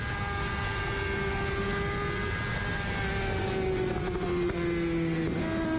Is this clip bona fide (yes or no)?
yes